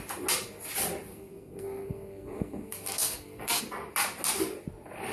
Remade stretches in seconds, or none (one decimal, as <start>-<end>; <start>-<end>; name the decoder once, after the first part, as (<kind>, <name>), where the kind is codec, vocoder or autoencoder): 1.1-3.6 (codec, SNAC)